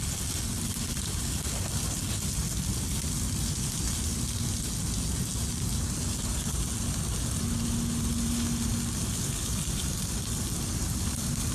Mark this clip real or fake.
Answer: real